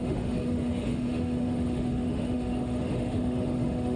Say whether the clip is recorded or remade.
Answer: remade